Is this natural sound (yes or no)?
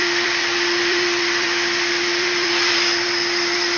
no